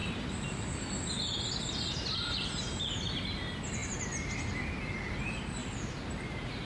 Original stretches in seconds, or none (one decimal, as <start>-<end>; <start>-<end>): 1.0-5.6